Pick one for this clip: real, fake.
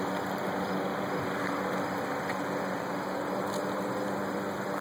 real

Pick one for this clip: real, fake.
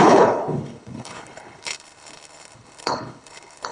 fake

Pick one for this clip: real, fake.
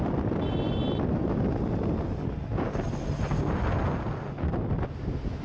real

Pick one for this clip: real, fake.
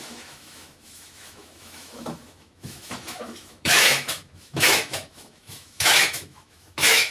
fake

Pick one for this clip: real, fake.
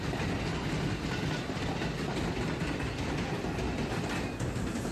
real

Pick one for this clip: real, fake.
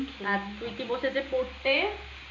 real